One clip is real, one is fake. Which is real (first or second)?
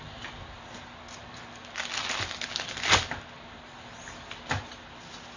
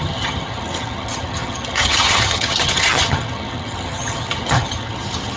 first